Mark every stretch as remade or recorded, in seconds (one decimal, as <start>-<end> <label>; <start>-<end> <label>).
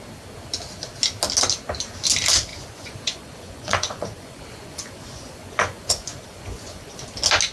0.0-2.5 recorded; 2.5-7.0 remade; 7.0-7.5 recorded